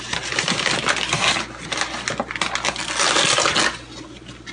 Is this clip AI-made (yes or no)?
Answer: no